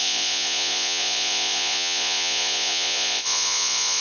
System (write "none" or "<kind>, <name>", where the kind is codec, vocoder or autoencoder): vocoder, Vocos